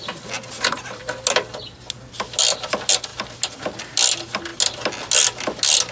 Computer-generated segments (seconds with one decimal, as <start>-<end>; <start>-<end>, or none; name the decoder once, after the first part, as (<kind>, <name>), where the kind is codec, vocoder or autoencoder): none